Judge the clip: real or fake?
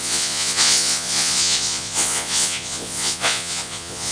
fake